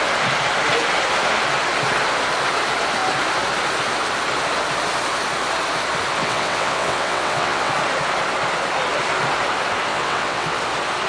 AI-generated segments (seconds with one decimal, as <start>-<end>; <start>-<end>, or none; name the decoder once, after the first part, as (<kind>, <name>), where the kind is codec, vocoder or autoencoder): 6.2-7.7 (vocoder, WaveNeXt); 9.9-10.6